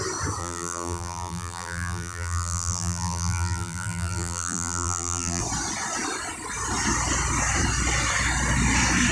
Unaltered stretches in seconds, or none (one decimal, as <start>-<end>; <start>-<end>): 0.0-0.4; 5.4-9.1